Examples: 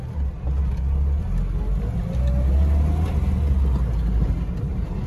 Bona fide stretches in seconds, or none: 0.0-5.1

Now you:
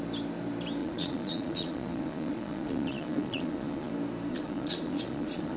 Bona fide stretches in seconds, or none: 0.0-0.8; 3.9-4.3

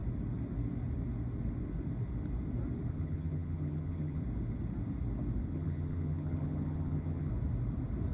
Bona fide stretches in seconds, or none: 0.0-2.9; 4.2-5.5; 7.3-8.1

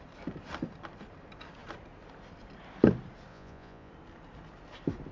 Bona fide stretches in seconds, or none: 0.0-3.3; 3.9-5.1